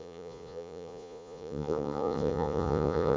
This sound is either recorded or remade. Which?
remade